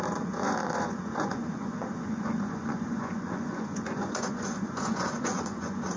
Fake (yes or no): yes